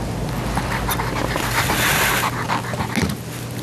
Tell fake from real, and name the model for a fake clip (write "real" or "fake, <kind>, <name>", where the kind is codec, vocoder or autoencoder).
real